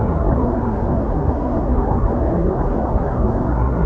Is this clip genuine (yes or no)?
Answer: no